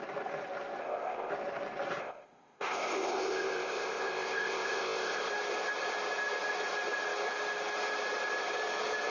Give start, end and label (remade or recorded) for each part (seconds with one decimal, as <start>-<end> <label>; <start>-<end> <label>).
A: 0.0-0.8 recorded; 0.8-1.3 remade; 1.3-2.0 recorded; 2.0-5.3 remade; 5.3-9.1 recorded